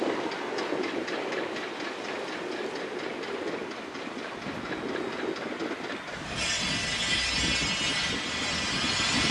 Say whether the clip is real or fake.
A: real